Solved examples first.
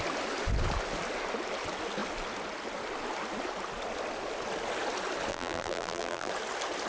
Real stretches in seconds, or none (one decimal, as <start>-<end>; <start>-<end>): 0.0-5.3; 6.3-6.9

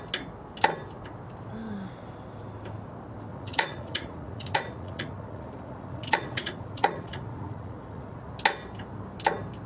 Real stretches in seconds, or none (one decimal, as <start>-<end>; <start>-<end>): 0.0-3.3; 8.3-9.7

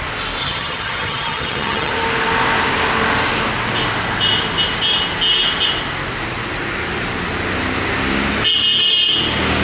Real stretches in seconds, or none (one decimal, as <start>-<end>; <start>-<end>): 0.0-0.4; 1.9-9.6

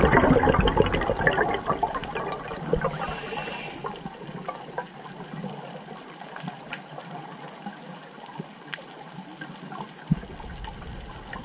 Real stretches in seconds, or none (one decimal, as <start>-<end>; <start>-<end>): 0.0-11.4

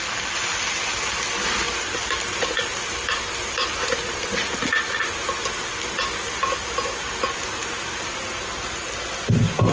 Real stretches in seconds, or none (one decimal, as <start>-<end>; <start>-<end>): 0.0-9.7